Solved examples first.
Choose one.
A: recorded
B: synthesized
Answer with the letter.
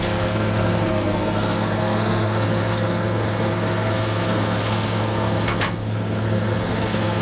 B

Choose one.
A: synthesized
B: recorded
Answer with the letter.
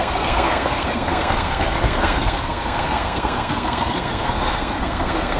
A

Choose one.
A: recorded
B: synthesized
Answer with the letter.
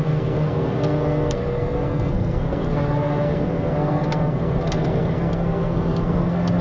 B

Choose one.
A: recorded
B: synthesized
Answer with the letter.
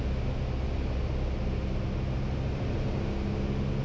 A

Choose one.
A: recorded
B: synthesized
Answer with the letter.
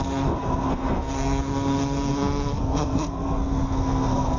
B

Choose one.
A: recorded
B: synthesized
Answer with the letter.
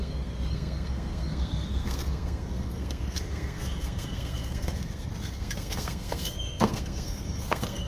B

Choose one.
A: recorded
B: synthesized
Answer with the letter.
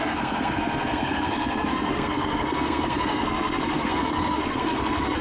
B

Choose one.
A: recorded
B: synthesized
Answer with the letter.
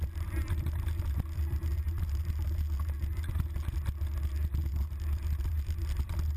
A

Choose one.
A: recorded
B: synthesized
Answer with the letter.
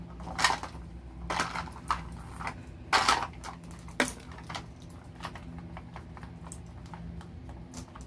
A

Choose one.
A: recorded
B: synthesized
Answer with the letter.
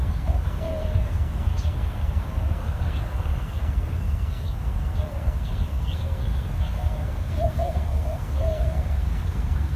B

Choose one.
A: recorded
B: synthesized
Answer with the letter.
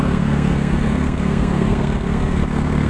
B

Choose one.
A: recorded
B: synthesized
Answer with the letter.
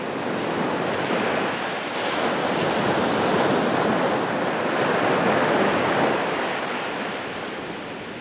A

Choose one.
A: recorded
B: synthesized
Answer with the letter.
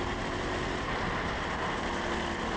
A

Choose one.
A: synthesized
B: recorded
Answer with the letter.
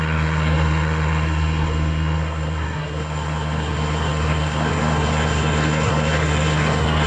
A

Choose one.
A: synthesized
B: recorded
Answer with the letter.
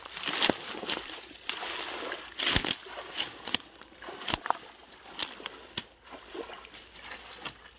B